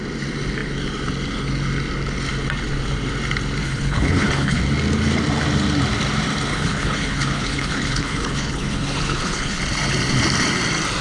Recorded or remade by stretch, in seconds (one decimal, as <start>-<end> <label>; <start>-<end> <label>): 0.0-3.6 recorded; 3.6-4.6 remade; 4.6-6.5 recorded; 6.5-9.6 remade; 9.6-11.0 recorded